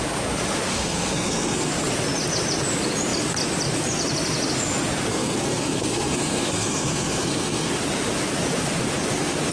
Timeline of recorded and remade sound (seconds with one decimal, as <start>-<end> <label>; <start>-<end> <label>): 0.0-0.7 recorded; 0.7-1.7 remade; 1.7-5.1 recorded; 5.1-7.7 remade; 7.7-9.5 recorded

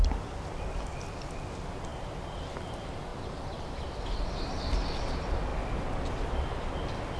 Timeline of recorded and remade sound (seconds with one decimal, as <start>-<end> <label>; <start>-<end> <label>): 0.0-3.1 recorded; 3.1-4.0 remade; 4.0-7.2 recorded

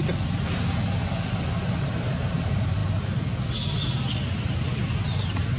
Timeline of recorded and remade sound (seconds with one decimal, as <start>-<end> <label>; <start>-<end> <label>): 0.0-5.6 recorded

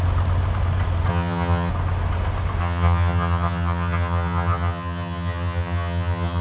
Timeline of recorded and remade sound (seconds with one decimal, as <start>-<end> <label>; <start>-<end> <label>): 0.0-1.1 recorded; 1.1-1.7 remade; 1.7-2.6 recorded; 2.6-6.4 remade

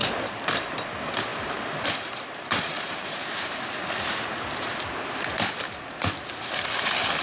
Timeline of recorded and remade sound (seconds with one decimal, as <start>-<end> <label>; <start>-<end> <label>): 0.0-1.3 recorded; 1.3-4.7 remade; 4.7-7.2 recorded